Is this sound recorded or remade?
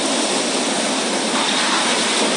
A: recorded